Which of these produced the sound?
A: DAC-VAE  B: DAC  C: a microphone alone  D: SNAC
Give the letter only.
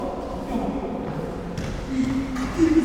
C